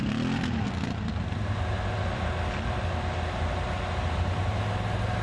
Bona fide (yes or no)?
yes